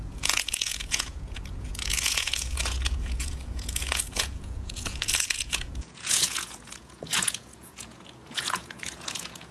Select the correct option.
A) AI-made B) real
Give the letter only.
A